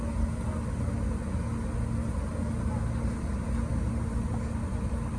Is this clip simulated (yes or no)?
no